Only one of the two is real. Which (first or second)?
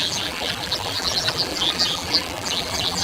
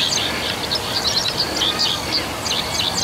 second